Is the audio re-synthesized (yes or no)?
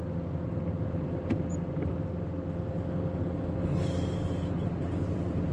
no